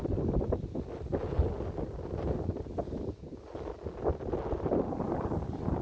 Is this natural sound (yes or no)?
yes